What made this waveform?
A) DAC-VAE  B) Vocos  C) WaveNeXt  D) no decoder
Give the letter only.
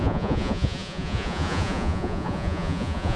B